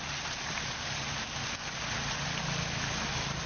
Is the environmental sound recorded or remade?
recorded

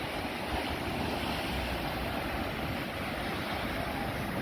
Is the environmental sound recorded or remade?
recorded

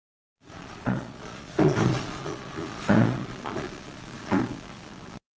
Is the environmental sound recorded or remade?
remade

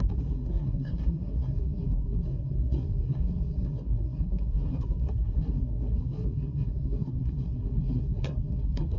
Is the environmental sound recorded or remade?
remade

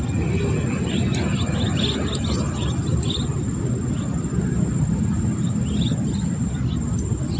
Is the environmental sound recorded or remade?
recorded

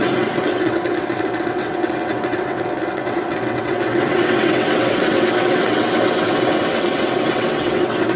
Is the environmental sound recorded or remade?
remade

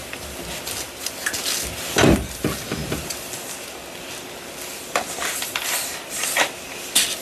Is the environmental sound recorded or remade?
recorded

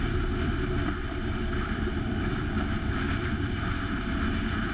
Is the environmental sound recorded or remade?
remade